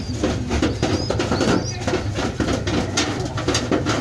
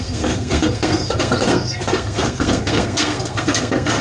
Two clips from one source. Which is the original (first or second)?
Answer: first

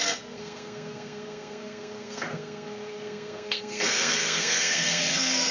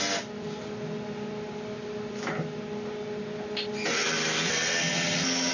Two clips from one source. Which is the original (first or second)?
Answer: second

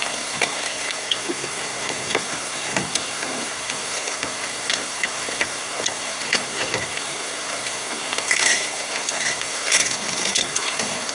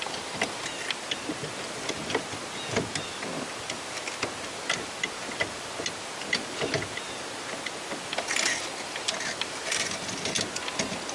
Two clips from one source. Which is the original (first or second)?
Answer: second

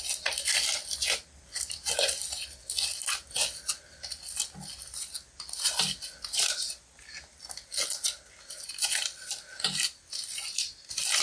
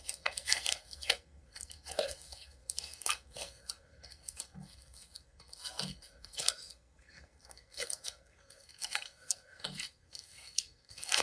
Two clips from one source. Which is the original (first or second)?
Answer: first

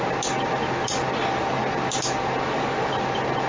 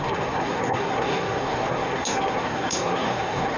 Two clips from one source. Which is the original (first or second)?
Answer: first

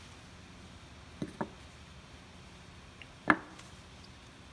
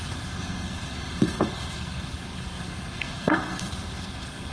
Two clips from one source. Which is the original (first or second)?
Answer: first